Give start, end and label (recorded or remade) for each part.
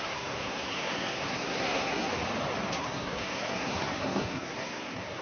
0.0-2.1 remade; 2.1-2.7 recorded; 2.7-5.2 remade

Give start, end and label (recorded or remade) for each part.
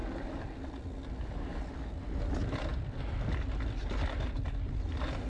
0.0-5.3 recorded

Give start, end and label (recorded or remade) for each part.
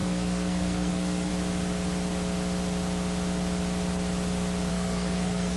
0.0-1.3 remade; 1.3-4.7 recorded; 4.7-5.6 remade